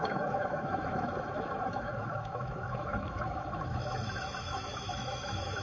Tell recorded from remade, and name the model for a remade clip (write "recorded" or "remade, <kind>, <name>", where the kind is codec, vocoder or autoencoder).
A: remade, autoencoder, DAC-VAE